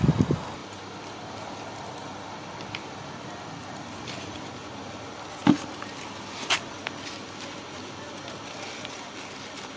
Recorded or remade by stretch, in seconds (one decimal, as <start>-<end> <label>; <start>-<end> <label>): 0.0-0.6 recorded; 0.6-4.5 remade; 4.5-5.4 recorded; 5.4-8.5 remade; 8.5-9.8 recorded